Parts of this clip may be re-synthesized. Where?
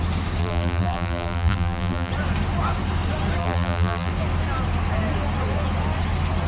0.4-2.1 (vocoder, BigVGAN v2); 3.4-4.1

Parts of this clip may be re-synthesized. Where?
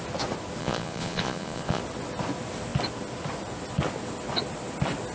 0.6-1.8 (vocoder, Vocos)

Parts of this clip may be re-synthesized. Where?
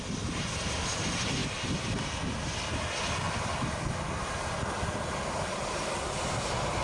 none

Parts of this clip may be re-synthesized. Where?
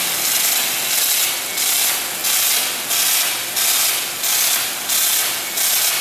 none